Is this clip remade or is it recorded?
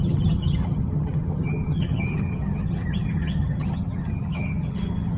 remade